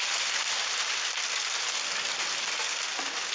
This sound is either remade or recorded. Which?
recorded